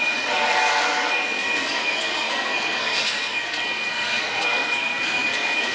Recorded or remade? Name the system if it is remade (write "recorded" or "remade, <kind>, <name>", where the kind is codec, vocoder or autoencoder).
remade, codec, SNAC